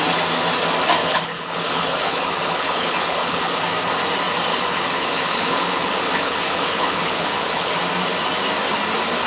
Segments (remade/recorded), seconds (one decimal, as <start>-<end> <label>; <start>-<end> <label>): 0.0-1.0 recorded; 1.0-3.6 remade; 3.6-4.5 recorded; 4.5-7.7 remade; 7.7-9.3 recorded